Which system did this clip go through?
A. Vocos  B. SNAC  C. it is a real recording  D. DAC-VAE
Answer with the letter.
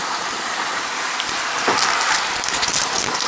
C